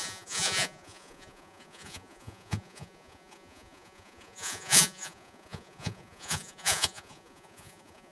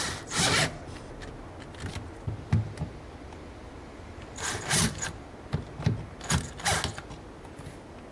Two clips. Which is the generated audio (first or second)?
first